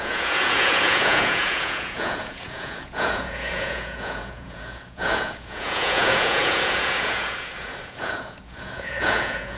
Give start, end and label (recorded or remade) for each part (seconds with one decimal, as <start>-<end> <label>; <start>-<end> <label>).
0.0-9.6 remade